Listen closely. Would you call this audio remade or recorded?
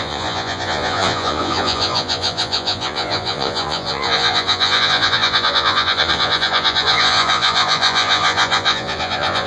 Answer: remade